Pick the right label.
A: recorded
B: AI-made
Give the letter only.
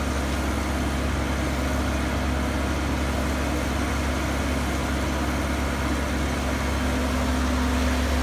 A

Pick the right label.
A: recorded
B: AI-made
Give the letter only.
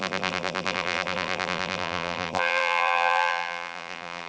B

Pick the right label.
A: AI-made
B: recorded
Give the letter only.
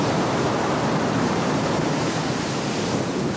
A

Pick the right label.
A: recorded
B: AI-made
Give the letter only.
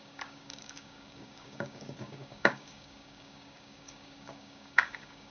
B